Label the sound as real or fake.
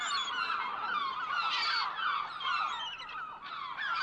real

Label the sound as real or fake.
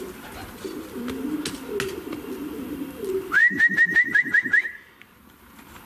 real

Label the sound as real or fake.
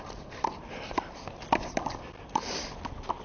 real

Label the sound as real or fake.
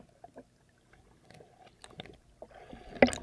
real